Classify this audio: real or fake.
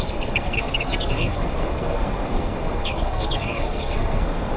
fake